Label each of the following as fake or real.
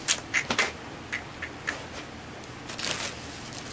real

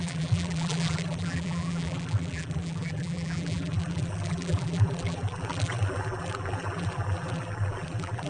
fake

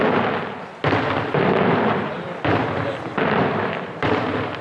real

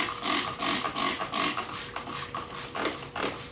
real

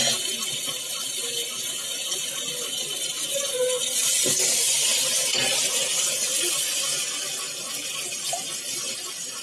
real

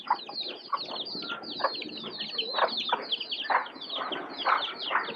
real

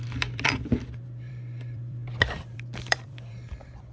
fake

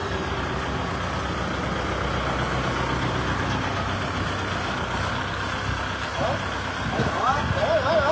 real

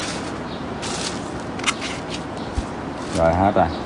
real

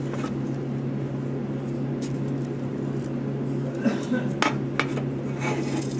real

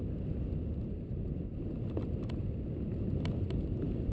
real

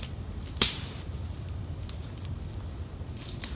fake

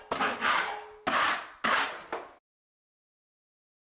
real